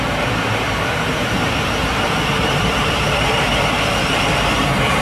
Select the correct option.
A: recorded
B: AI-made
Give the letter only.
B